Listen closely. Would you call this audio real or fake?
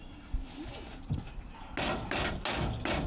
real